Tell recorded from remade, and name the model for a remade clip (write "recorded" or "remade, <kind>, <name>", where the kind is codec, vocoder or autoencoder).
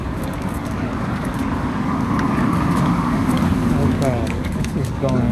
remade, codec, DAC